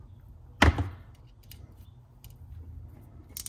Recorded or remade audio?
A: recorded